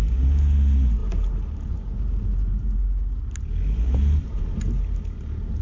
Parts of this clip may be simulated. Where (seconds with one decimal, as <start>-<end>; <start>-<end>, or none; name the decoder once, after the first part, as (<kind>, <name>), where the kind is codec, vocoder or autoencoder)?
none